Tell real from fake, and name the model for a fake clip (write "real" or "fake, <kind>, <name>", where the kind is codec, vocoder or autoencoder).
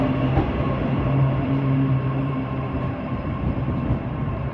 fake, vocoder, BigVGAN v2